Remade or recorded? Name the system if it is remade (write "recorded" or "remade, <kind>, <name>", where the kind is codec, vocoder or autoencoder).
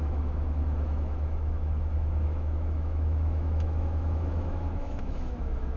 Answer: remade, autoencoder, DAC-VAE